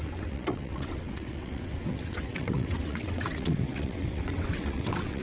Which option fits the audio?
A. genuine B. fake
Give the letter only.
B